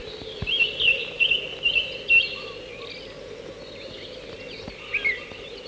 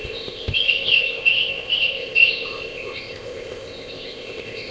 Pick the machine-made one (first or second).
second